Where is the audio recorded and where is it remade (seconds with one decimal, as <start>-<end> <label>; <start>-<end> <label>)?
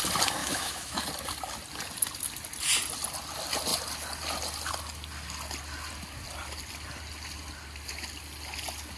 0.0-0.4 recorded; 0.4-1.0 remade; 1.0-9.0 recorded